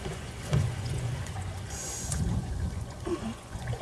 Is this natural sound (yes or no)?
no